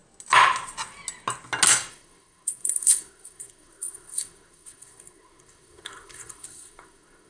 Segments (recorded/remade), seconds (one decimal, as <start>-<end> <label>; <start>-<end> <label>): 0.0-1.9 recorded; 1.9-7.3 remade